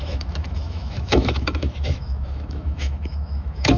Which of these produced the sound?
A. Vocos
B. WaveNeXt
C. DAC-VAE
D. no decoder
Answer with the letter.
C